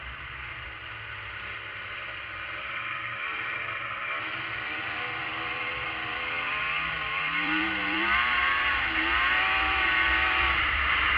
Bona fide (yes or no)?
no